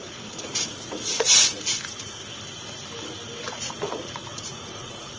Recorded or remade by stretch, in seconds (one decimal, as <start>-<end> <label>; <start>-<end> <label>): 0.0-2.2 remade; 2.2-3.5 recorded; 3.5-5.2 remade